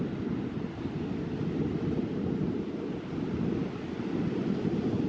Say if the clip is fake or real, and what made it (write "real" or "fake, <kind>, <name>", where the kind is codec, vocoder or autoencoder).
real